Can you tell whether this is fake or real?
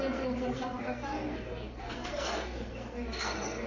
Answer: fake